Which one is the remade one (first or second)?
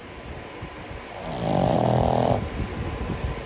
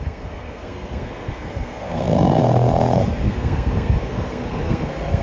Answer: second